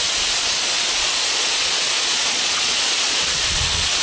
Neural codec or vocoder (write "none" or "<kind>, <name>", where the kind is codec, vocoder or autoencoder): vocoder, Vocos